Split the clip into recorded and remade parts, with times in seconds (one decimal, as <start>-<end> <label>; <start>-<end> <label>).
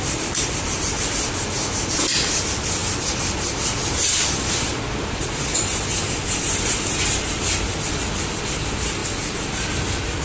0.0-10.2 recorded